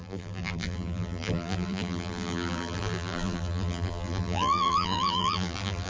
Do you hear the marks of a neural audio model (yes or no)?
yes